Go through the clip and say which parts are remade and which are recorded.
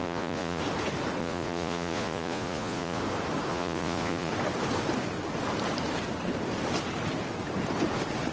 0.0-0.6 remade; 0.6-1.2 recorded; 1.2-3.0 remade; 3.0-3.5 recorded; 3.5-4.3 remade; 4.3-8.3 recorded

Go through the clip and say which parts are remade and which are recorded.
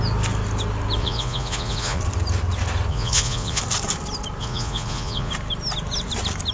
0.0-1.0 recorded; 1.0-2.0 remade; 2.0-2.9 recorded; 2.9-3.6 remade; 3.6-4.4 recorded; 4.4-5.3 remade; 5.3-6.5 recorded